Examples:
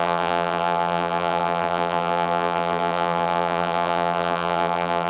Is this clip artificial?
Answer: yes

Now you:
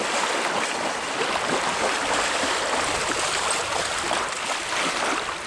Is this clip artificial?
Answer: no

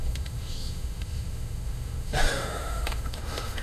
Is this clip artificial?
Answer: yes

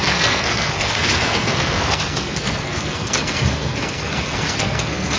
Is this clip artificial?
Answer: yes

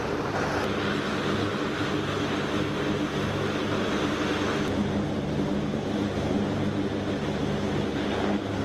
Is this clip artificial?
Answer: no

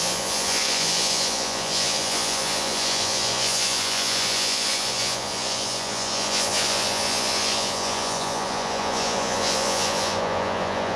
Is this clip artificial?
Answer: yes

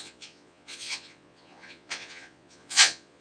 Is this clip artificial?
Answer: yes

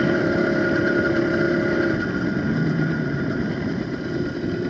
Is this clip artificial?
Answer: yes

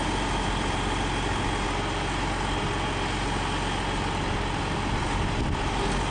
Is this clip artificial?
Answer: no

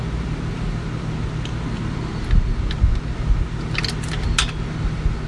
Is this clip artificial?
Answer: no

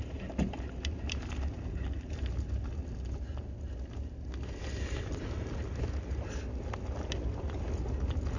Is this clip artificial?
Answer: no